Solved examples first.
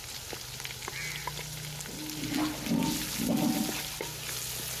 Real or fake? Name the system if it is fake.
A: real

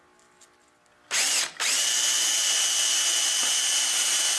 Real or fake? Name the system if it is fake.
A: real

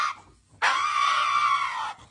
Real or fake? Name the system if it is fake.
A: real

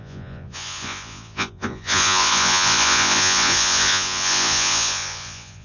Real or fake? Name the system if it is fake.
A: fake, vocoder, Vocos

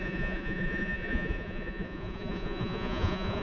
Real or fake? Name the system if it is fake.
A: fake, vocoder, Vocos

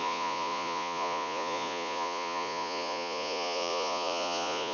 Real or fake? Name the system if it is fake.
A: fake, vocoder, Vocos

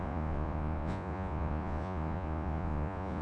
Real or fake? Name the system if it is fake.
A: fake, vocoder, Vocos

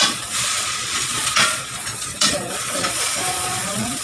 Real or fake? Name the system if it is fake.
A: fake, vocoder, Vocos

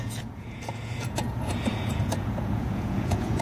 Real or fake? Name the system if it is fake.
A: fake, vocoder, Vocos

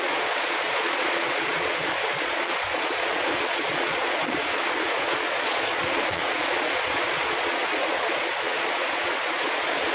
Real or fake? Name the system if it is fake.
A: fake, vocoder, Vocos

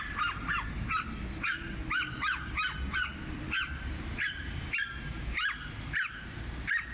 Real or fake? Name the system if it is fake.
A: real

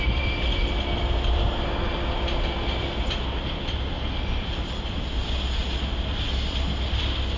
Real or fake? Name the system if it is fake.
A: real